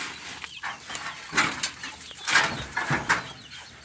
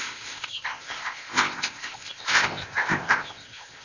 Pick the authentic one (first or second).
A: first